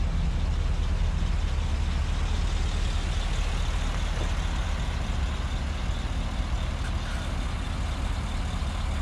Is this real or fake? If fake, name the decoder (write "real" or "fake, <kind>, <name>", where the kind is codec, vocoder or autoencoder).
real